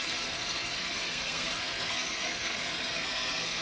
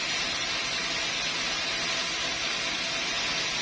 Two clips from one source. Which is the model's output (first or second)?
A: first